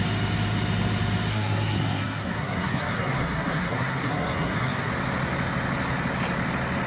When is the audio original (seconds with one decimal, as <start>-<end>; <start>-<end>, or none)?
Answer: 0.0-1.3; 4.9-6.9